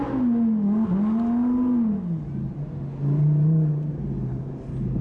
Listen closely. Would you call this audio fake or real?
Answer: real